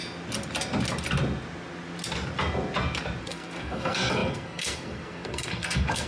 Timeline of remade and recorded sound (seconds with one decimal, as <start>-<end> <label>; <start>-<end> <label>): 0.0-3.2 recorded; 3.2-6.1 remade